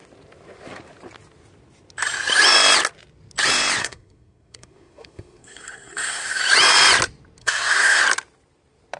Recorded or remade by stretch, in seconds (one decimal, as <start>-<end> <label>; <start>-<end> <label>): 0.0-3.8 recorded; 3.8-6.4 remade; 6.4-7.4 recorded; 7.4-8.0 remade; 8.0-9.0 recorded